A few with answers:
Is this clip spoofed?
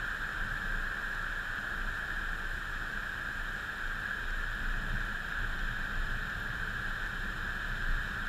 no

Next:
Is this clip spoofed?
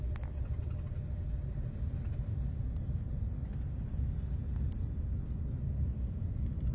no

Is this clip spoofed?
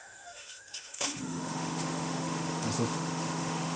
yes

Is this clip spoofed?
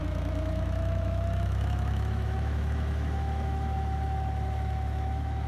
yes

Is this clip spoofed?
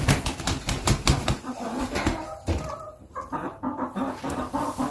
no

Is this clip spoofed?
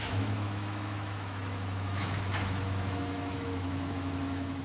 yes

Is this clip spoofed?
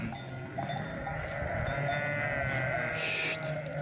no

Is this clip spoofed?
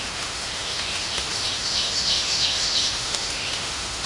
yes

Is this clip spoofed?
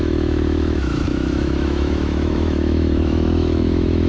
yes